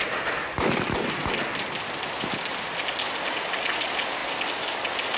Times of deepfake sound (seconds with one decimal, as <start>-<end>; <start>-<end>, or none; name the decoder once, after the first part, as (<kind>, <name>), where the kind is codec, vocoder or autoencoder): none